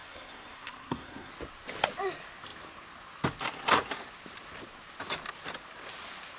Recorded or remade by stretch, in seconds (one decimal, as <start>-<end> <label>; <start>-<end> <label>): 0.0-1.3 remade; 1.3-6.4 recorded